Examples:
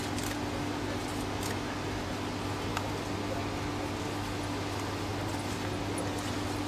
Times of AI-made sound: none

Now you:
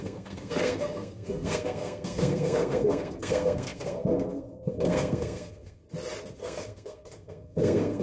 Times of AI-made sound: 0.0-5.8 (codec, SNAC); 6.4-8.0

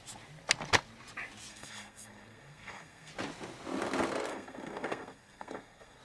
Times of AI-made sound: 1.5-3.1 (codec, SNAC); 4.3-6.0

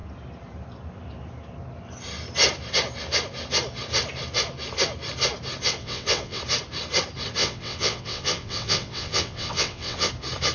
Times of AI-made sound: 5.6-6.4 (vocoder, WaveNeXt); 7.4-10.1

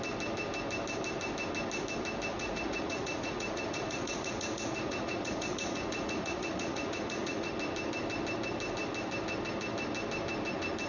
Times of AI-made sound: 2.3-7.5 (vocoder, Vocos)

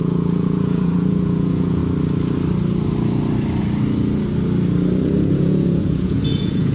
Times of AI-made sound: 0.0-1.8 (vocoder, Vocos); 5.3-6.7